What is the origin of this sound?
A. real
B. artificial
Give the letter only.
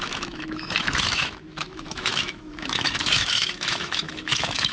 B